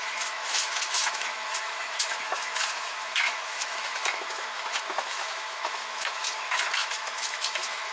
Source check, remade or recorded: remade